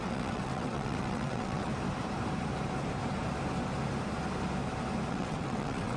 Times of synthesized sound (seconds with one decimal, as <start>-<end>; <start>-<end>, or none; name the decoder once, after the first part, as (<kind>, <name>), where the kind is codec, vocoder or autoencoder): 0.0-1.7 (vocoder, WaveNeXt); 5.1-6.0